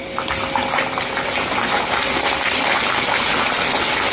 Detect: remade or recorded recorded